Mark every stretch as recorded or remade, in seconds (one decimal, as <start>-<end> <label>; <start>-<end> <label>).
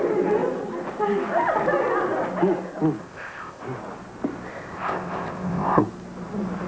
0.0-3.0 recorded; 3.0-3.6 remade; 3.6-4.5 recorded; 4.5-5.8 remade; 5.8-6.7 recorded